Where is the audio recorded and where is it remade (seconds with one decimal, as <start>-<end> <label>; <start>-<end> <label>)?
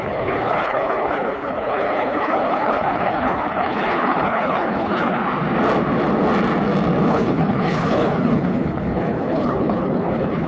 0.0-5.2 remade; 5.2-7.1 recorded; 7.1-10.5 remade